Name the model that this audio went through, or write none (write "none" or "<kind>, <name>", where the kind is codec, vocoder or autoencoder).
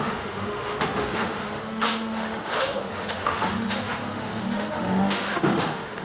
autoencoder, DAC-VAE